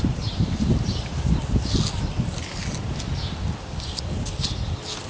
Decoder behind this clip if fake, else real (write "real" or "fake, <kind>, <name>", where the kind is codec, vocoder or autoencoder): real